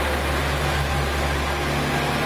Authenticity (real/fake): real